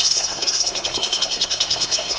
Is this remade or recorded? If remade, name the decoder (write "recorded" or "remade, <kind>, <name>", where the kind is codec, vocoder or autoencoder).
remade, codec, SNAC